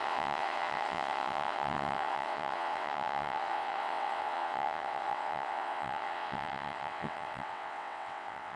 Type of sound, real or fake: fake